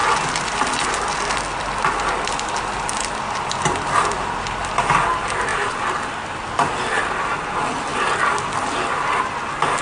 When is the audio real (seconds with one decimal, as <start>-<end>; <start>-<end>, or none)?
0.0-9.8

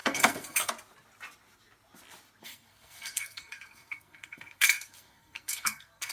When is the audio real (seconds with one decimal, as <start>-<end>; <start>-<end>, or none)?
0.7-2.4